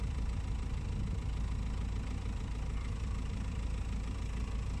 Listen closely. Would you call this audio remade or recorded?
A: remade